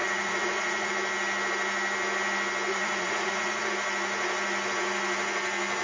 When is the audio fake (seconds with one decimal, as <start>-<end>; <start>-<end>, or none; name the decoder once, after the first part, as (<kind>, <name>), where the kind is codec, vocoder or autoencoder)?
0.0-0.9 (vocoder, Vocos); 2.7-3.7